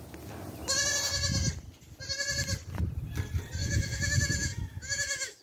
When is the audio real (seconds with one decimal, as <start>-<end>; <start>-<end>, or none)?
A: 0.0-3.6